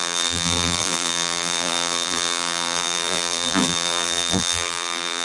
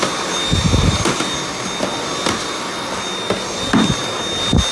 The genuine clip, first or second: second